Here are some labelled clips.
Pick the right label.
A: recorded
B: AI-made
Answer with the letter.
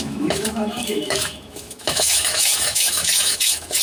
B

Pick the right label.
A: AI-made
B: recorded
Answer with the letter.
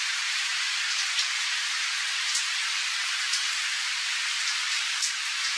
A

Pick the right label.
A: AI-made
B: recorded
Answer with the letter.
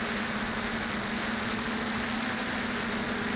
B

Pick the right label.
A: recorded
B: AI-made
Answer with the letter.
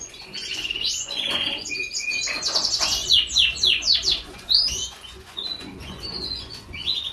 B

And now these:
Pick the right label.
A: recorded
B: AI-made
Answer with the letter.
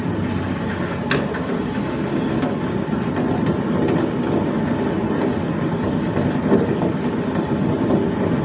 B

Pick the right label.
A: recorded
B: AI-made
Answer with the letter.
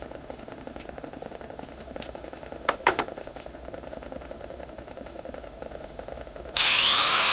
B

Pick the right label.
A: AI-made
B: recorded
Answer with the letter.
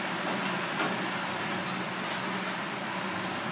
B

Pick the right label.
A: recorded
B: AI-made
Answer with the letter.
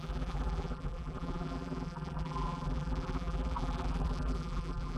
B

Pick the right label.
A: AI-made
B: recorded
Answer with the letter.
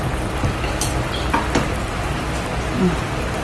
B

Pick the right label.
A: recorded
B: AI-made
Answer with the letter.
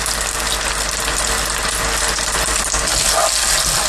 A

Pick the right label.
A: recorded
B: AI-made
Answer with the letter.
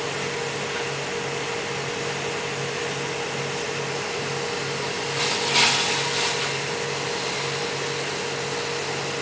A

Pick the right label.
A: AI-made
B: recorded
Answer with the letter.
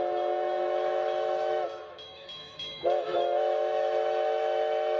A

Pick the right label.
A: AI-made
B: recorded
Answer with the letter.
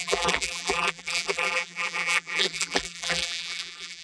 A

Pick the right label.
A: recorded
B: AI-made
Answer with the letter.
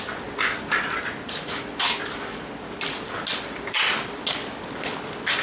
A